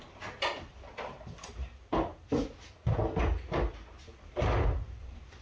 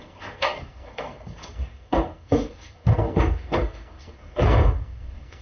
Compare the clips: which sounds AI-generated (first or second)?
second